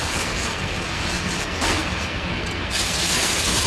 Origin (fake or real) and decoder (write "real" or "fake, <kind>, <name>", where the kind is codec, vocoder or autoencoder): fake, codec, SNAC